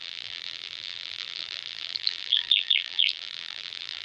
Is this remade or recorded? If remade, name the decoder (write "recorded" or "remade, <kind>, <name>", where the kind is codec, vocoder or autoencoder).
remade, vocoder, BigVGAN v2